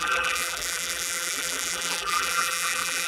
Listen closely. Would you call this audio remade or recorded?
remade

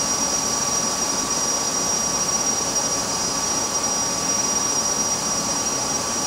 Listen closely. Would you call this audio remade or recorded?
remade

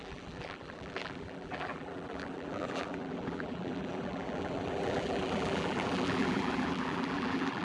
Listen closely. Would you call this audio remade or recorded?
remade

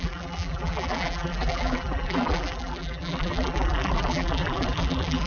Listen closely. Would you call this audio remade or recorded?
remade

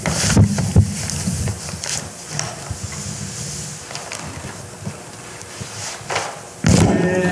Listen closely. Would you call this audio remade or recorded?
remade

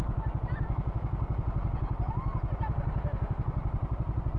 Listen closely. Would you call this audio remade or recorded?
recorded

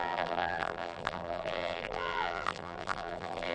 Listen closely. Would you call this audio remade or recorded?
remade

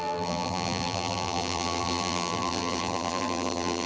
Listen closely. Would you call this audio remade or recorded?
remade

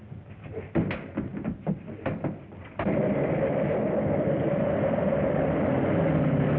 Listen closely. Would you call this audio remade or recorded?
recorded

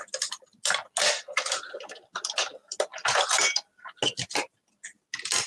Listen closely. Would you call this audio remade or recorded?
recorded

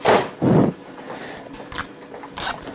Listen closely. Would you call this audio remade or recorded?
recorded